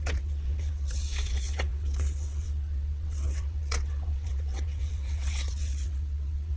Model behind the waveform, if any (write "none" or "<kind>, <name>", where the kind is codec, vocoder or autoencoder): vocoder, WaveNeXt